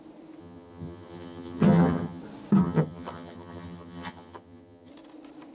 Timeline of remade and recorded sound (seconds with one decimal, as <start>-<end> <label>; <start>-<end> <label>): 0.0-0.4 recorded; 0.4-2.2 remade; 2.2-2.6 recorded; 2.6-4.9 remade; 4.9-5.5 recorded